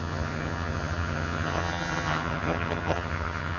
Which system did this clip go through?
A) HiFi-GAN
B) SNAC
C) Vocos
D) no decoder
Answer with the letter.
A